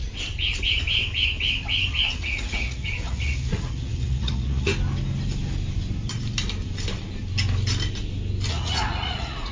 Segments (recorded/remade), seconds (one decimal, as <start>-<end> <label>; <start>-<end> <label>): 0.0-1.9 recorded; 1.9-4.7 remade; 4.7-8.5 recorded; 8.5-9.5 remade